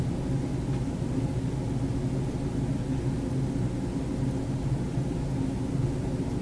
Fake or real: real